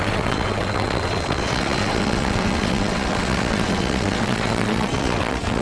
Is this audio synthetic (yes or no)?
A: yes